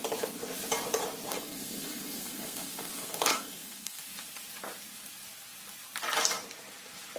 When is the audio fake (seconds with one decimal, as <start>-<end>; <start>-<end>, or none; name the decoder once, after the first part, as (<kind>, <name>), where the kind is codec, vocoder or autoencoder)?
1.3-4.0 (codec, SNAC)